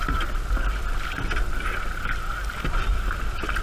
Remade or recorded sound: recorded